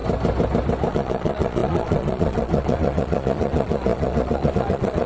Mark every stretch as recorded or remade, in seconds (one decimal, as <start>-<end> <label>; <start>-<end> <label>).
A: 0.0-0.9 recorded; 0.9-5.1 remade